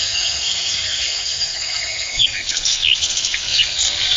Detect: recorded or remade remade